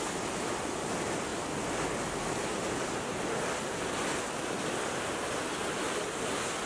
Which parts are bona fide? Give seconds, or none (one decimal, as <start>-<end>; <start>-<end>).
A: 0.0-6.7